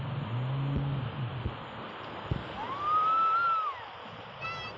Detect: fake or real real